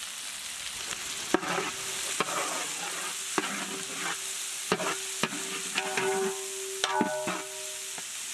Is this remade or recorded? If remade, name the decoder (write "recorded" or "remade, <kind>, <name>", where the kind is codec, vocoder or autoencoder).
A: recorded